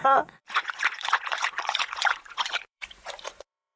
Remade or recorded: remade